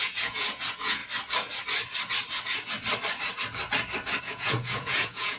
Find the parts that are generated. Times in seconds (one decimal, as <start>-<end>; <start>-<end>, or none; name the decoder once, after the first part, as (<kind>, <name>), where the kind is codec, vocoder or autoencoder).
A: 0.0-1.0 (vocoder, Vocos); 4.2-5.4